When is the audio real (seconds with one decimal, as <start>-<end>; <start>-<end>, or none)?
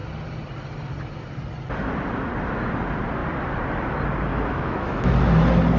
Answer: 0.0-4.3; 5.1-5.8